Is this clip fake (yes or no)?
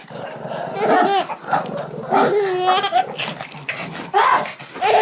no